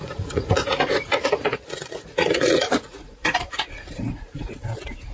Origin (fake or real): fake